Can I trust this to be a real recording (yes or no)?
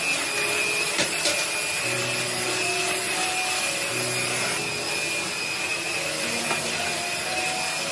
yes